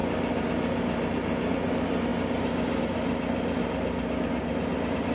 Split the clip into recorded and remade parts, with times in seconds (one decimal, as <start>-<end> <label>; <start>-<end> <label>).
0.0-5.1 recorded